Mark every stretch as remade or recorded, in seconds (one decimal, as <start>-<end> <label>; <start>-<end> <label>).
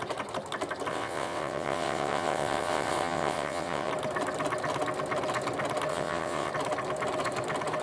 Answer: 0.0-0.9 recorded; 0.9-3.9 remade; 3.9-5.9 recorded; 5.9-6.5 remade; 6.5-7.8 recorded